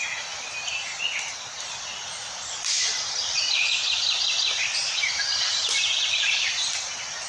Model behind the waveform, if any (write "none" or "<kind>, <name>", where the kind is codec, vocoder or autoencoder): vocoder, BigVGAN v2